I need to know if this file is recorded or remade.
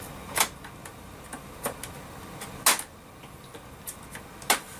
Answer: recorded